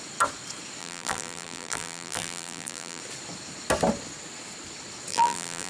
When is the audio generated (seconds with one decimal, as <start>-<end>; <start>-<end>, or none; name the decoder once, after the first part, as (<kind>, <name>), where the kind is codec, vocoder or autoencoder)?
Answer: 0.8-3.0 (vocoder, BigVGAN v2); 5.1-5.7

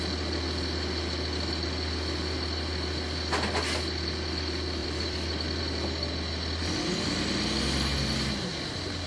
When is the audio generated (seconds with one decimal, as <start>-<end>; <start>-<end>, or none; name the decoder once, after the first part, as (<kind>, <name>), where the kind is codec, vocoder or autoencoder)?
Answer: 4.8-5.6 (vocoder, BigVGAN v2); 6.6-7.2

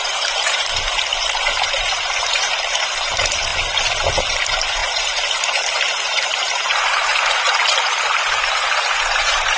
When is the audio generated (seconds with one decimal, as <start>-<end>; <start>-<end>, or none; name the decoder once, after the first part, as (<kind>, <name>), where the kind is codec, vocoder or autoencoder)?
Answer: 0.0-3.5 (vocoder, BigVGAN v2); 4.2-9.6

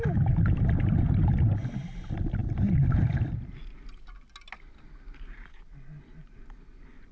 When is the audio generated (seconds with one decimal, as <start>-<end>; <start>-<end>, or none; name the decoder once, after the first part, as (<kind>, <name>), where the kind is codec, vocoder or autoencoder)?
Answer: none

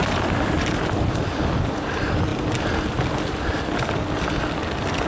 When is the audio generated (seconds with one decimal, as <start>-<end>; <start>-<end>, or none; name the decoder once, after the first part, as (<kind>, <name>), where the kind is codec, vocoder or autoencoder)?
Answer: none

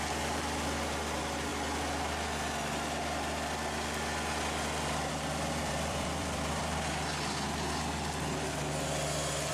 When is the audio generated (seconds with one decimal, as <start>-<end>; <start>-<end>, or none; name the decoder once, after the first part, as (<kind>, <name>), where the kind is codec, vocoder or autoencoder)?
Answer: 5.6-6.6 (vocoder, BigVGAN v2)